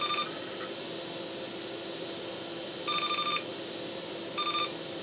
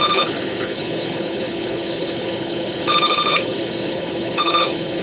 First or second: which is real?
first